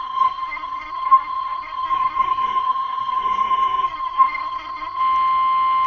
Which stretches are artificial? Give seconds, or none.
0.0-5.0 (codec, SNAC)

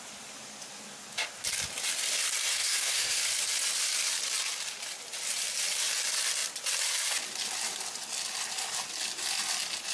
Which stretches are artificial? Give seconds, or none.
2.6-3.2 (codec, SNAC)

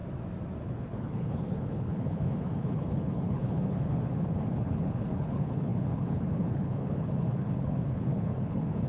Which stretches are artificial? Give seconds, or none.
0.6-8.9 (codec, HILCodec)

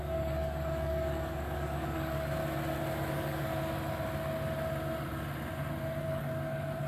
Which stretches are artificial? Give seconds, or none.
0.0-2.4 (codec, DAC); 3.1-3.5; 6.0-6.9

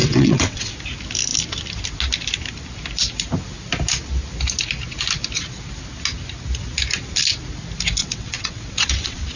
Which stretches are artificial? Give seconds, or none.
0.0-0.7 (vocoder, WaveNeXt); 8.0-9.4

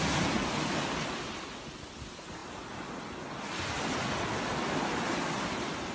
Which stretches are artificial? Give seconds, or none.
none

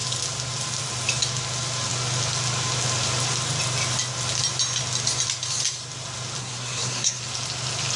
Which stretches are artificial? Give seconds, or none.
6.4-7.2 (codec, SNAC)